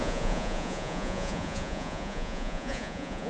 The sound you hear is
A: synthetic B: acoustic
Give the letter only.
A